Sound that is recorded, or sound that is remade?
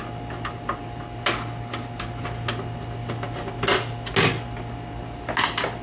recorded